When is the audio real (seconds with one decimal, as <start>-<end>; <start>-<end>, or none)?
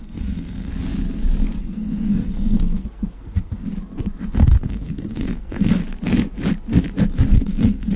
0.7-1.6; 3.7-4.2; 5.8-7.3